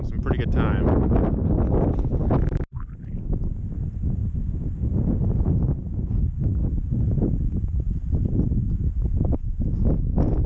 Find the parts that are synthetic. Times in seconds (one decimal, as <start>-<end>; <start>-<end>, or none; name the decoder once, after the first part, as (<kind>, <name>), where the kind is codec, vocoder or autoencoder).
4.2-5.6 (vocoder, Vocos); 6.6-7.6